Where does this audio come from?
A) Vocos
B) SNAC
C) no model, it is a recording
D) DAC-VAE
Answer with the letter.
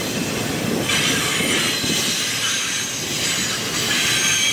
C